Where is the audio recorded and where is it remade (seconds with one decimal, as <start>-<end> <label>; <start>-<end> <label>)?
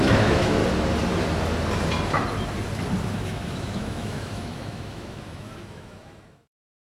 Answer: 0.0-0.6 remade; 0.6-3.0 recorded; 3.0-6.9 remade